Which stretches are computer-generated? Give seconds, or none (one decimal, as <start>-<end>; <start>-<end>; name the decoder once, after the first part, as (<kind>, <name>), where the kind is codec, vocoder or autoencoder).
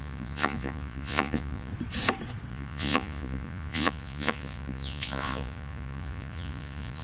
0.0-1.7 (vocoder, Vocos); 2.5-7.0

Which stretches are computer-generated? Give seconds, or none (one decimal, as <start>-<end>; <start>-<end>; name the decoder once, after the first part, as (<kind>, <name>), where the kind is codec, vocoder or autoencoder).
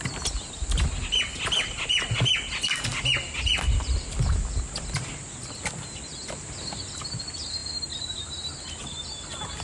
none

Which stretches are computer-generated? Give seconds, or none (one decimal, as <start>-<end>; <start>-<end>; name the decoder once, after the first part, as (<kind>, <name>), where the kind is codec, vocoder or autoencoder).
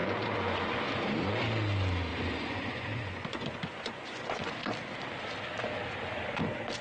0.0-0.8 (vocoder, Vocos); 2.1-4.7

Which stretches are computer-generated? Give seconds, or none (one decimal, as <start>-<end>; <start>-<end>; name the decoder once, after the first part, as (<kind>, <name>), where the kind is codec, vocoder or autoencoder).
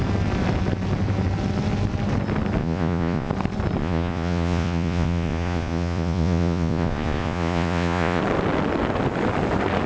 2.6-3.3 (vocoder, Vocos); 3.8-8.2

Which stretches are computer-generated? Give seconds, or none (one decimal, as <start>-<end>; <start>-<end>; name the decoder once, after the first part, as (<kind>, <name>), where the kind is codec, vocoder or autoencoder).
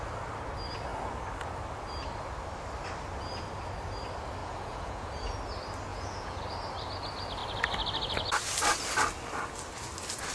4.4-5.1 (vocoder, Vocos); 5.9-6.4